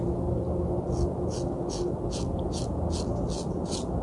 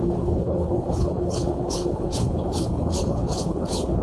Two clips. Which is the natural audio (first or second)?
first